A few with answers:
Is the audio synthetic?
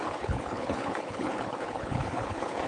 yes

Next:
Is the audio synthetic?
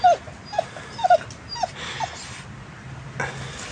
no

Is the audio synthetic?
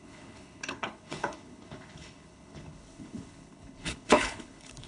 yes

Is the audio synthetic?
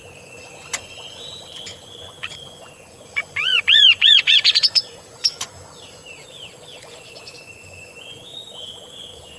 yes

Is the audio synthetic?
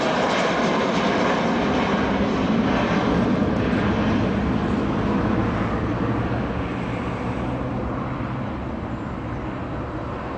no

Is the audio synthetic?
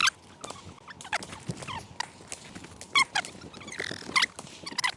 no